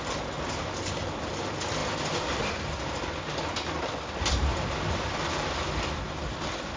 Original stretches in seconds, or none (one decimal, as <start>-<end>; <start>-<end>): 0.0-6.8